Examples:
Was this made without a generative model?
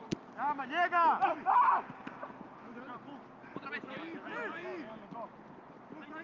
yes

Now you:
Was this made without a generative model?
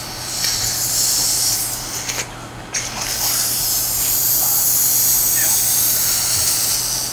yes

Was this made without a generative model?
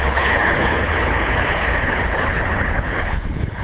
no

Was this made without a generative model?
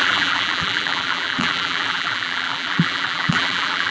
no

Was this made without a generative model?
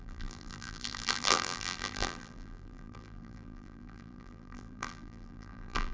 no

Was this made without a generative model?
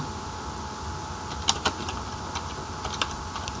yes